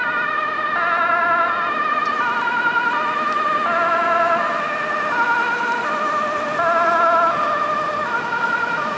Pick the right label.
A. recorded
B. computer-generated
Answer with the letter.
A